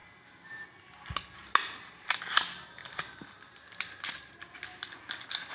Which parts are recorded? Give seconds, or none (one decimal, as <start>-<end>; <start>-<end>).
0.0-5.5

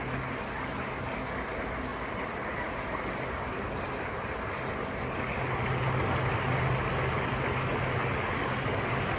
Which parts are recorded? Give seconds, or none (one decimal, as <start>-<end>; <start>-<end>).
0.0-9.2

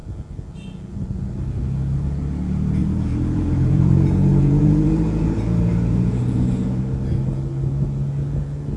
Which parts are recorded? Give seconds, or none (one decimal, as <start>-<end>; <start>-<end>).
0.0-2.8; 6.8-8.8

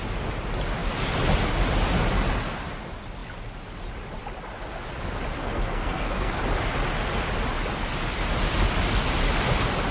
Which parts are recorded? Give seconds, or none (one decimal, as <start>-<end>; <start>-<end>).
0.0-5.4; 6.4-9.9